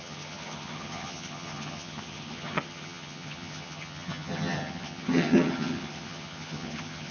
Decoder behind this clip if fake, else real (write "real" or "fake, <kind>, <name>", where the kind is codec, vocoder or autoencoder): fake, vocoder, HiFi-GAN